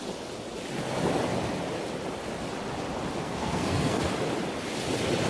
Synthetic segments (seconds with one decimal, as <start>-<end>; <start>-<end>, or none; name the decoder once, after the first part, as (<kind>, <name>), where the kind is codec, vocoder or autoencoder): 3.2-4.0 (codec, SNAC)